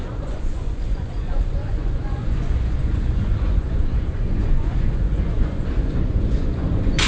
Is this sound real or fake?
fake